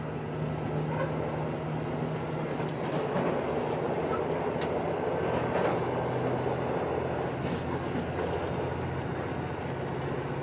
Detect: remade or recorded recorded